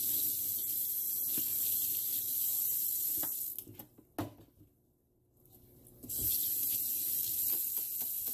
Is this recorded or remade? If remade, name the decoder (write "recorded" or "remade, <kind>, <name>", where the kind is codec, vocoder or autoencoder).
recorded